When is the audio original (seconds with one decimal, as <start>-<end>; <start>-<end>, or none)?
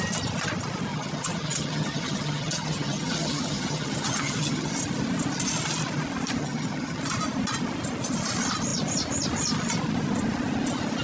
0.0-0.9; 4.7-6.4; 7.0-11.0